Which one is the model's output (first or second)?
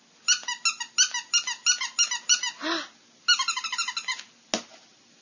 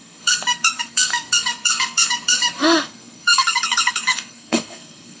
second